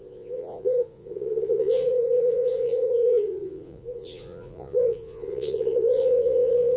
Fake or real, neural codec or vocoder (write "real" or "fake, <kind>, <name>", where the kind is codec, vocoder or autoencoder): fake, vocoder, Vocos